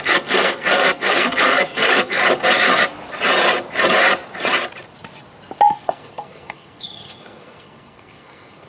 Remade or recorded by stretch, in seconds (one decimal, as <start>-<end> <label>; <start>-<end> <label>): 0.0-2.2 remade; 2.2-5.7 recorded; 5.7-8.7 remade